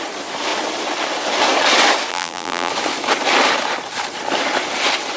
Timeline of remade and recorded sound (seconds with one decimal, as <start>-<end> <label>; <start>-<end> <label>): 0.0-2.1 recorded; 2.1-2.7 remade; 2.7-5.2 recorded